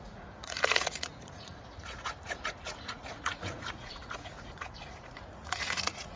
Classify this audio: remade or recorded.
remade